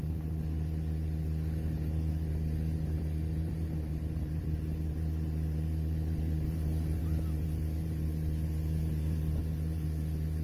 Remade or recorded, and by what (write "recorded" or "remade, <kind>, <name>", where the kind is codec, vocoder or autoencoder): remade, vocoder, BigVGAN v2